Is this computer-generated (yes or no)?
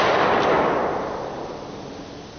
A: no